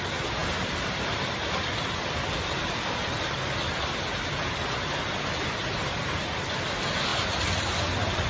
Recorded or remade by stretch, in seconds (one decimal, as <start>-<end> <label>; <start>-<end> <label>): 0.0-0.4 recorded; 0.4-4.7 remade; 4.7-7.1 recorded; 7.1-8.3 remade